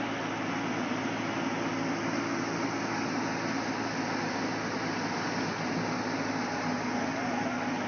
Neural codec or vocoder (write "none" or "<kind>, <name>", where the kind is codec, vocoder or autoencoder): none